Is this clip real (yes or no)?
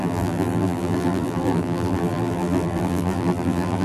no